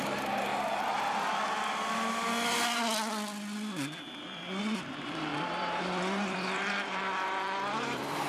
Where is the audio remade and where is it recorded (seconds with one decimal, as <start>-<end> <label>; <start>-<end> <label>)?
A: 0.0-0.5 remade; 0.5-4.6 recorded; 4.6-8.3 remade